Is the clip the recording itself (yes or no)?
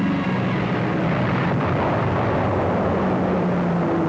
yes